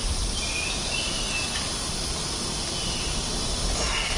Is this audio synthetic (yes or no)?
no